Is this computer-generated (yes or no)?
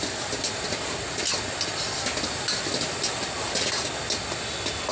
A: no